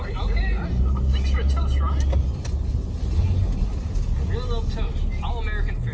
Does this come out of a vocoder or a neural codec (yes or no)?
no